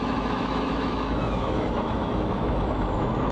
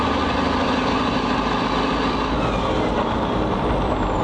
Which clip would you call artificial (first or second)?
first